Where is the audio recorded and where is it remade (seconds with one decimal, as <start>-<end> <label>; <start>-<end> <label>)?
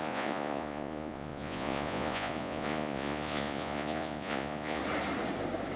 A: 0.0-4.8 remade; 4.8-5.8 recorded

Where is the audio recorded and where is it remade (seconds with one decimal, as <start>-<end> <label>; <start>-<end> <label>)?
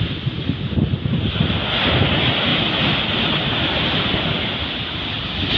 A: 0.0-5.6 recorded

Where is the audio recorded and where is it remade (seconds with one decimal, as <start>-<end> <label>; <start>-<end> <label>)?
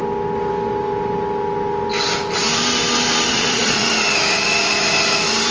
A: 0.0-3.3 recorded; 3.3-3.9 remade; 3.9-5.5 recorded